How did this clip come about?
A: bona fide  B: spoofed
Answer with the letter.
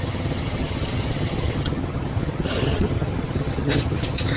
B